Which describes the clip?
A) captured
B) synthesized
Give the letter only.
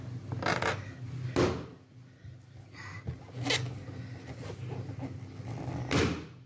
A